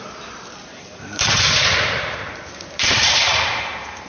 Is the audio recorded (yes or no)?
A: no